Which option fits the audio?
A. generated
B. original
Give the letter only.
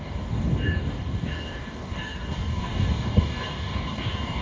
A